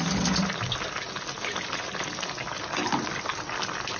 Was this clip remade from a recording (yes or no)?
no